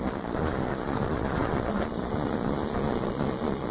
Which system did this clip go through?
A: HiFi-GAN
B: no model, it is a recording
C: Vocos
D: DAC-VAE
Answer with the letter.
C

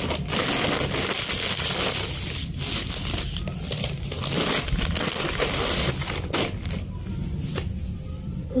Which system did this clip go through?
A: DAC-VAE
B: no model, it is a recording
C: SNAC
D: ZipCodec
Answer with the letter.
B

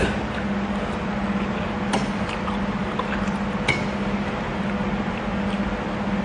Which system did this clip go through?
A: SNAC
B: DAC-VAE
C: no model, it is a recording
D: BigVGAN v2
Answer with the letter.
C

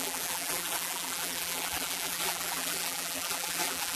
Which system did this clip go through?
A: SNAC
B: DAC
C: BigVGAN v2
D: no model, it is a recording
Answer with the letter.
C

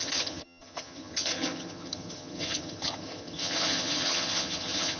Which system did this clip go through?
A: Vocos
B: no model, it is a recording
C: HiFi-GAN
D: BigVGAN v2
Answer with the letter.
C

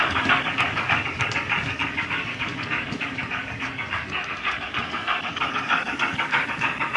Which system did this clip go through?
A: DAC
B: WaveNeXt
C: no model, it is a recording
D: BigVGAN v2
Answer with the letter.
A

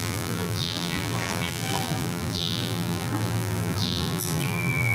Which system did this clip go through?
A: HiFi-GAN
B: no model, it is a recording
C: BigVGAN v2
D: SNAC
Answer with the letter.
C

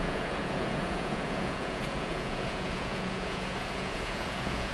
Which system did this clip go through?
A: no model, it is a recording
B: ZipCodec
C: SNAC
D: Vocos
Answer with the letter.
D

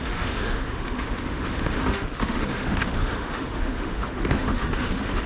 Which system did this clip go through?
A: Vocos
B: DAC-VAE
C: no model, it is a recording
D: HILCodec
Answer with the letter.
B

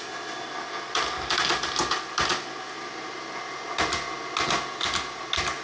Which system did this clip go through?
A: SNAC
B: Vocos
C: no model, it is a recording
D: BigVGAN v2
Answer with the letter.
C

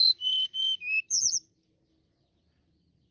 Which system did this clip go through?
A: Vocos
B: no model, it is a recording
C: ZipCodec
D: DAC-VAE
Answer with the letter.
B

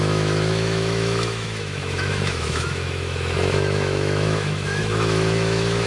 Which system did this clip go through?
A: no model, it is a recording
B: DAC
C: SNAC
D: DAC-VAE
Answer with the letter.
D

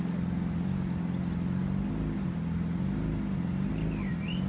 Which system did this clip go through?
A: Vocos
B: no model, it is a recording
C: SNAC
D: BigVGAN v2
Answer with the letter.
B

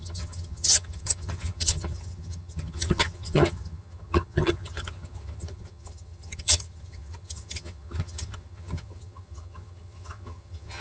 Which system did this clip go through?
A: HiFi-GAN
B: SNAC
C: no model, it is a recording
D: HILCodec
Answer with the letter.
A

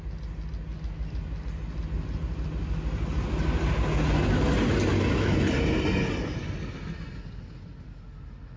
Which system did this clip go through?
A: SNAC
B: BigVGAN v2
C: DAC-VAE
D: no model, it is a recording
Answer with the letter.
D